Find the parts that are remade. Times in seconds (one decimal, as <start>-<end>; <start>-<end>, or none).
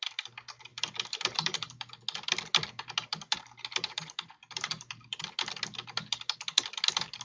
0.7-2.0; 3.1-5.2